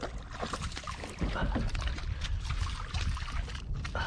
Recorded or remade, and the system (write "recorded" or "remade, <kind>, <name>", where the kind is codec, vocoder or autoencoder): recorded